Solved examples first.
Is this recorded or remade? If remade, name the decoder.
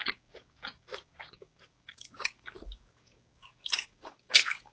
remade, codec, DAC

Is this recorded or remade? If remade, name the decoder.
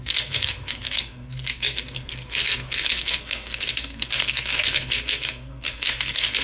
remade, codec, SNAC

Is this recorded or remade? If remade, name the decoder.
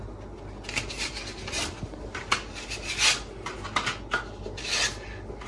recorded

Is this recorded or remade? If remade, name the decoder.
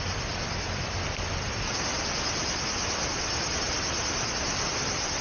recorded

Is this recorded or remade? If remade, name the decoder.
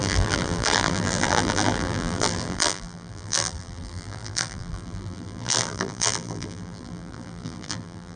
remade, vocoder, BigVGAN v2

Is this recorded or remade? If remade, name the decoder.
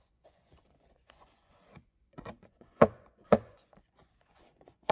remade, vocoder, Vocos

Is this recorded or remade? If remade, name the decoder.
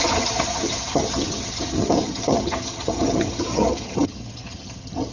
remade, vocoder, HiFi-GAN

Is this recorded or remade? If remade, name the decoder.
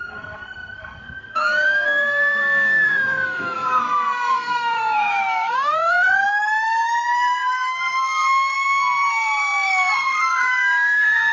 remade, codec, SNAC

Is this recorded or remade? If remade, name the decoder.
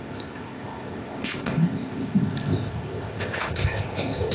remade, codec, ZipCodec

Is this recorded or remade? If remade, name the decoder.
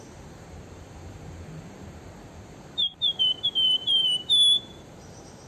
remade, vocoder, BigVGAN v2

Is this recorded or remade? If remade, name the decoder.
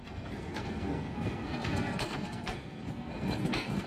remade, codec, SNAC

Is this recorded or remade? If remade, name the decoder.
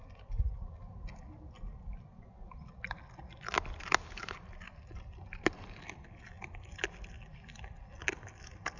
recorded